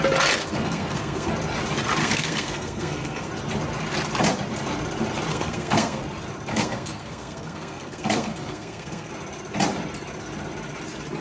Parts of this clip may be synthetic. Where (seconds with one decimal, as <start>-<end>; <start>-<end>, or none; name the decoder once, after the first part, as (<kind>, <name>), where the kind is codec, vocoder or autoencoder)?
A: 0.4-1.3 (codec, SNAC); 2.0-3.3; 5.3-6.0; 6.5-9.1